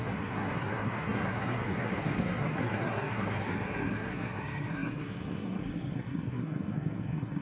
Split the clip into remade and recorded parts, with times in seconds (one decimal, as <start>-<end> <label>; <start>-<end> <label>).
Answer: 0.0-7.4 remade